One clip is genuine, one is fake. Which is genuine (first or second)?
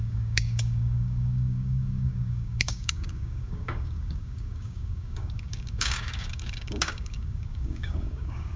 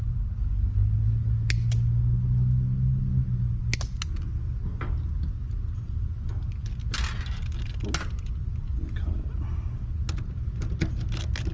second